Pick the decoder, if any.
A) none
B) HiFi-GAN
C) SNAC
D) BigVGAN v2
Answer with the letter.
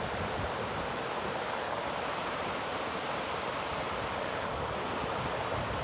A